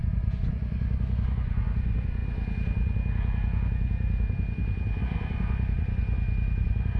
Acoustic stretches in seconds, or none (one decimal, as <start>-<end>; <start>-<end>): 2.2-5.0; 6.0-6.6